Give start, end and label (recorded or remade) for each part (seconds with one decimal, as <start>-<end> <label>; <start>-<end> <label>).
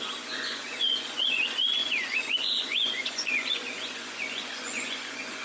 0.0-5.4 remade